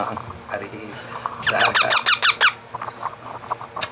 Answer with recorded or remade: recorded